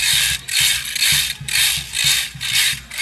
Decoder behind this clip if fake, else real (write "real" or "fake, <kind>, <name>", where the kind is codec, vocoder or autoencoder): real